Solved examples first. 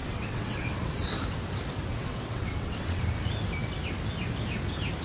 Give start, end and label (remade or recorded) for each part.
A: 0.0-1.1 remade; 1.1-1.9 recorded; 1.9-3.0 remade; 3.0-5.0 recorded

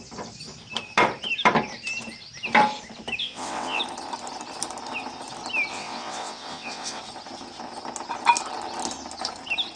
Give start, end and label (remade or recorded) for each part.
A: 0.0-3.2 recorded; 3.2-3.8 remade; 3.8-5.7 recorded; 5.7-7.0 remade; 7.0-9.8 recorded

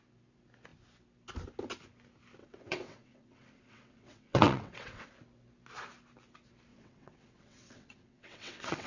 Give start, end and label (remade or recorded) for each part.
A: 0.0-2.4 recorded; 2.4-5.1 remade; 5.1-6.7 recorded; 6.7-8.9 remade

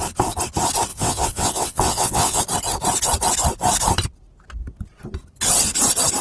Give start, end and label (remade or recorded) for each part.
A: 0.0-0.9 recorded; 0.9-2.4 remade; 2.4-6.2 recorded

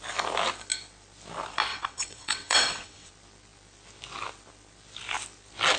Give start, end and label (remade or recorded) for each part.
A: 0.0-1.7 recorded; 1.7-3.1 remade; 3.1-5.8 recorded